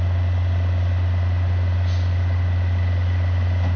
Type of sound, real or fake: real